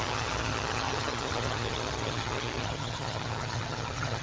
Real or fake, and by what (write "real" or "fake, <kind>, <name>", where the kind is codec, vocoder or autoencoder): fake, vocoder, HiFi-GAN